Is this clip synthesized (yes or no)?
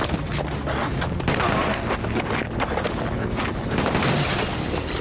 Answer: no